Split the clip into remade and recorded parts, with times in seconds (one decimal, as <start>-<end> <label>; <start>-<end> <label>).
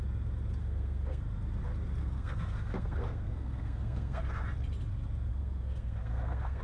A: 0.0-0.6 recorded; 0.6-1.2 remade; 1.2-2.0 recorded; 2.0-4.2 remade; 4.2-5.3 recorded; 5.3-6.6 remade